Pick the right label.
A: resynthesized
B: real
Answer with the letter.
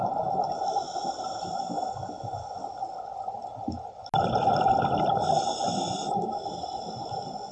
B